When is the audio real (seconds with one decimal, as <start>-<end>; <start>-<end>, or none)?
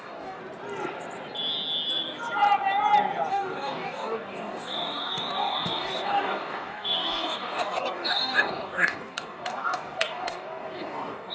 0.4-3.3